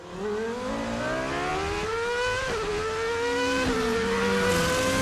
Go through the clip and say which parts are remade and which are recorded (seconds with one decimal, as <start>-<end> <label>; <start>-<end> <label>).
0.0-5.0 recorded